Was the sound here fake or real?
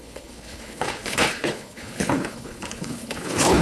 fake